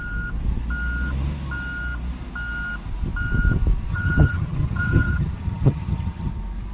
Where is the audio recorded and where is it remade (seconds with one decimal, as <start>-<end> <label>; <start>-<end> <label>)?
0.0-3.9 recorded; 3.9-6.3 remade; 6.3-6.7 recorded